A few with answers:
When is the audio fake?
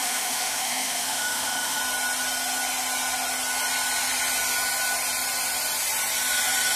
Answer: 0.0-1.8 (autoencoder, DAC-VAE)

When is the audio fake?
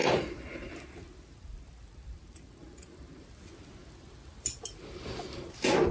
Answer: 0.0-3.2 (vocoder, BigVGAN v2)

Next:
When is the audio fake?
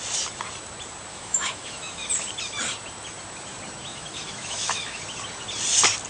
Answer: 1.1-2.1 (autoencoder, DAC-VAE); 3.9-5.0